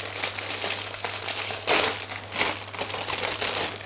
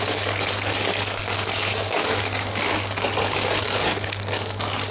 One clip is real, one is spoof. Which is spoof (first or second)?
second